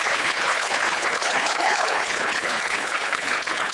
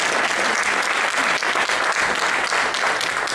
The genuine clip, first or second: second